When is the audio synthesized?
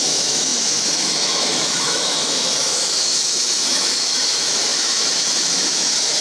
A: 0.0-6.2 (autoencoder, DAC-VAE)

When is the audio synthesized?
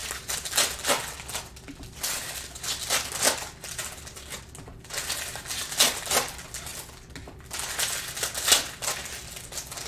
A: 0.0-4.4 (vocoder, BigVGAN v2)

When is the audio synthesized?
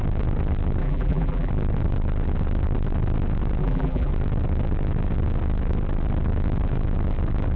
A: 0.8-1.5 (vocoder, BigVGAN v2); 3.6-4.1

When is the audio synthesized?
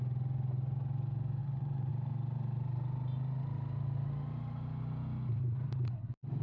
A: 1.4-1.9 (vocoder, WaveNeXt)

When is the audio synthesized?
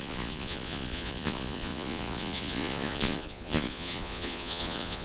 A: 0.0-5.0 (vocoder, Vocos)